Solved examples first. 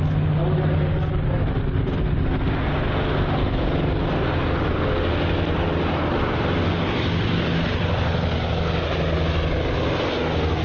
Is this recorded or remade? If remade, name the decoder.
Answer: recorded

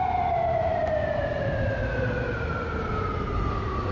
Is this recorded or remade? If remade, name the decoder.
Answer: recorded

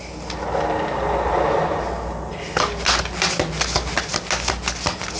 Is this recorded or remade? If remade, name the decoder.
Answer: recorded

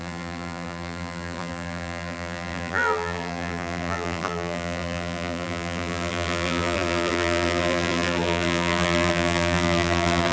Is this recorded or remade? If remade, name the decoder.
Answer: remade, vocoder, BigVGAN v2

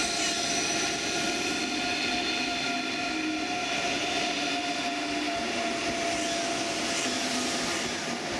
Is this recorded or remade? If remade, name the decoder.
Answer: recorded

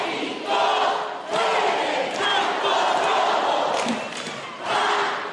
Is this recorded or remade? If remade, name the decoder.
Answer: recorded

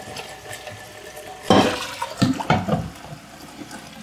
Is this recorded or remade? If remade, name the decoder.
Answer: recorded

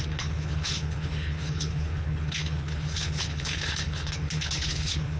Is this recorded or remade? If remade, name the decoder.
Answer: remade, codec, HILCodec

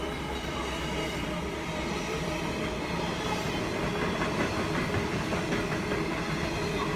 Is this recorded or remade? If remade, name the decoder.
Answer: recorded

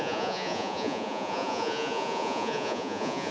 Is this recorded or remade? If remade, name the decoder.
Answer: remade, vocoder, Vocos